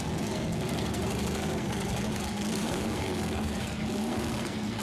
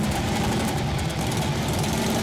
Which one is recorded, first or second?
second